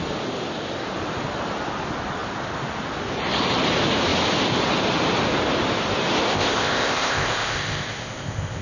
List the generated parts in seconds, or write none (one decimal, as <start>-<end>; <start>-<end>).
6.3-8.6